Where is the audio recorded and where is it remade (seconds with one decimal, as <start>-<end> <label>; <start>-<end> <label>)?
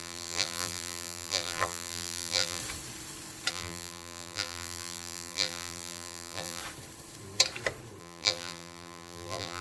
0.0-2.6 remade; 2.6-3.5 recorded; 3.5-6.6 remade; 6.6-8.0 recorded; 8.0-9.6 remade